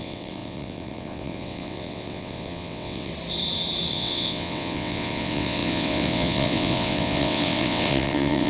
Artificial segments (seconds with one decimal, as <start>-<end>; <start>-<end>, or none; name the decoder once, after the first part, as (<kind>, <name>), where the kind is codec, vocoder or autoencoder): 0.0-3.1 (vocoder, WaveNeXt); 3.9-8.5